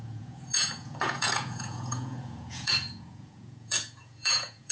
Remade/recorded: remade